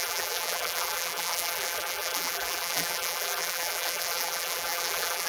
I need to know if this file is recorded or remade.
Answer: remade